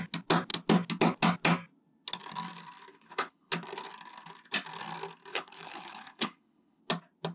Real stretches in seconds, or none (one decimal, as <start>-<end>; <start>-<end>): 0.0-2.9; 3.5-5.3; 6.8-7.3